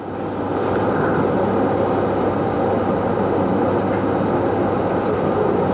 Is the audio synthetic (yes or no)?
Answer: no